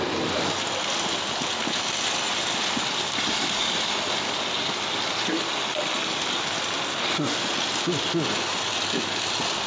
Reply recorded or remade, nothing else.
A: recorded